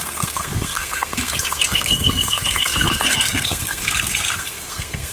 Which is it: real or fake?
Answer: fake